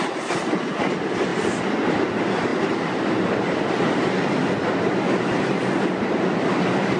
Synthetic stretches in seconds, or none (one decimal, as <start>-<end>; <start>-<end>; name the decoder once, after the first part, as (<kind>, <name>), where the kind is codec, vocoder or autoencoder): none